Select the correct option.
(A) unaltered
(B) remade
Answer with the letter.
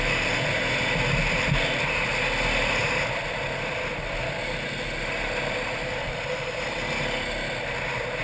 A